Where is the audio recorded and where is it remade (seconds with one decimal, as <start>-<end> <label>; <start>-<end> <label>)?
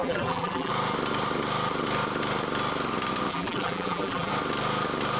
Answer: 0.0-0.7 remade; 0.7-3.3 recorded; 3.3-4.3 remade; 4.3-5.2 recorded